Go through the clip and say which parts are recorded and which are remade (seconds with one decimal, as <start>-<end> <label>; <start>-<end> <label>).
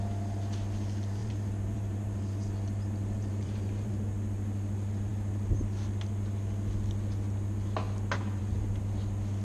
0.0-1.2 recorded; 1.2-3.9 remade; 3.9-9.4 recorded